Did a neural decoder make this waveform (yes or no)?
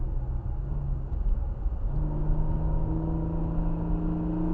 no